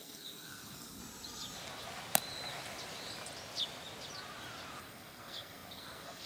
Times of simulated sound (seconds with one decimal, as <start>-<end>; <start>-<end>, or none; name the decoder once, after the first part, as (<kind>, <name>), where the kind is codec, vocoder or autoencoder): 0.0-1.0 (codec, SNAC); 4.8-6.3